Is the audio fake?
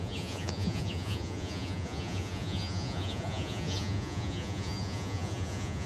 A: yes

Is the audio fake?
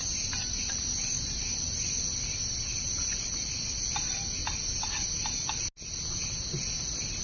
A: no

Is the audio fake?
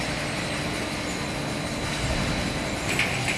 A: no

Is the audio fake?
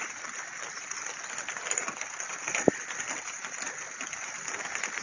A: no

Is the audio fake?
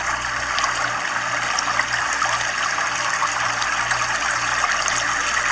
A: no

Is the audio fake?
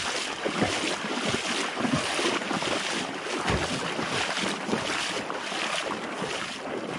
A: no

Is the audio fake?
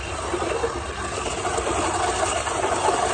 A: no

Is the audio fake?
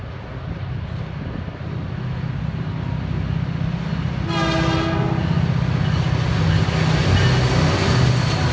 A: no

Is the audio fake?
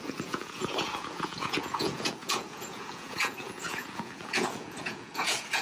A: yes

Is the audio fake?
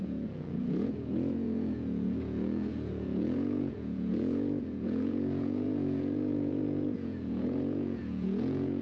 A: yes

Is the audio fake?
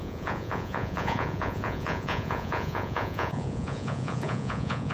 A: yes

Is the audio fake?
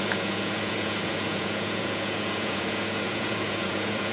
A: yes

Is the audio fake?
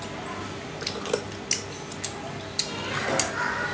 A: no